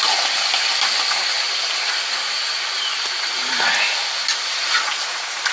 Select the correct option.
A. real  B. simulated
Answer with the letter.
A